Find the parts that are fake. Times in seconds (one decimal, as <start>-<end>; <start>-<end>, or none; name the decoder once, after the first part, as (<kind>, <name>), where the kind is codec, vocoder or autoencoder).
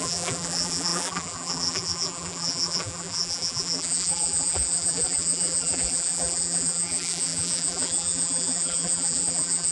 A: 0.0-9.7 (vocoder, BigVGAN v2)